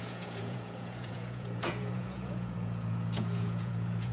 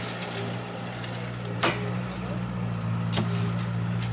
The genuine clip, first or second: second